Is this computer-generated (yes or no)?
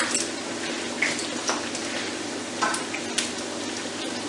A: no